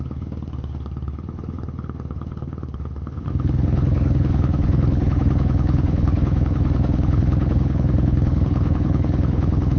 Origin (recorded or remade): remade